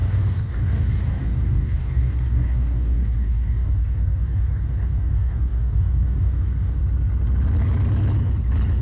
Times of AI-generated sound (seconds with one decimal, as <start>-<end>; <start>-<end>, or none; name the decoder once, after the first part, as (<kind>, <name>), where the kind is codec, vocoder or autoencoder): 0.0-6.8 (codec, DAC)